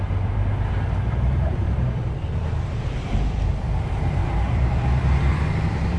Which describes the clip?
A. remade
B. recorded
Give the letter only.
A